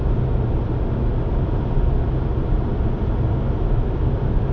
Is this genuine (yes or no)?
yes